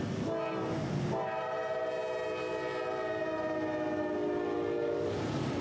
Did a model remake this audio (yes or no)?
no